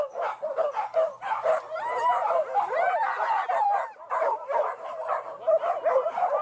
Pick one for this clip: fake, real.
fake